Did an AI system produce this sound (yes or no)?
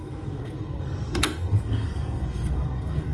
yes